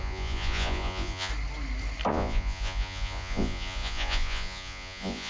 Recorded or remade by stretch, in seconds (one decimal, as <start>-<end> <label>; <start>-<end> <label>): 0.0-1.3 remade; 1.3-2.1 recorded; 2.1-5.3 remade

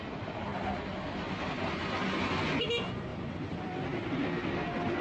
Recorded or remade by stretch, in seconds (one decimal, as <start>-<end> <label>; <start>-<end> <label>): 0.0-3.1 recorded; 3.1-3.8 remade; 3.8-5.0 recorded

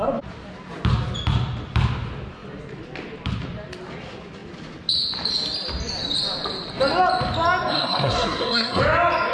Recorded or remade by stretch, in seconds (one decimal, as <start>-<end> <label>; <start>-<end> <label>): 0.0-7.7 recorded; 7.7-8.8 remade; 8.8-9.3 recorded

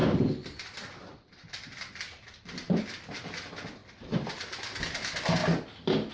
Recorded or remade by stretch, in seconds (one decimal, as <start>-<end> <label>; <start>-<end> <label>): 0.0-2.8 remade; 2.8-6.1 recorded